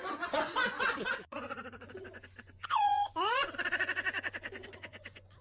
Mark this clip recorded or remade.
remade